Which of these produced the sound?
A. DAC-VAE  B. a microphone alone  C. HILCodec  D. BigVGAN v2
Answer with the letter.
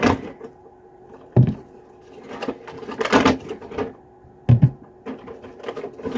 B